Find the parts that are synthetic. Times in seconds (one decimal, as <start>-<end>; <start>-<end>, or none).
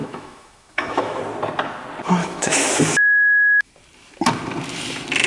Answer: 0.0-1.2; 2.2-3.7